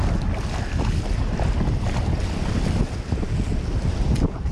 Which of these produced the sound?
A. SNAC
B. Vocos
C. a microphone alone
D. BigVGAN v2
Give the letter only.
C